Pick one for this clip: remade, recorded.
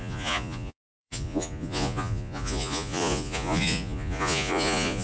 remade